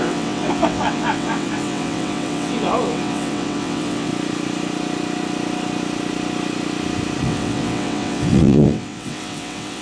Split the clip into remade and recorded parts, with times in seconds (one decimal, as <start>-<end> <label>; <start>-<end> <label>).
0.0-4.1 remade; 4.1-7.2 recorded; 7.2-9.8 remade